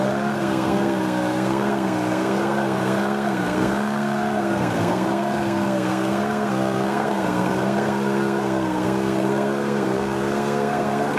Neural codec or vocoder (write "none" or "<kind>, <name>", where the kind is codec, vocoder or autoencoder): codec, SNAC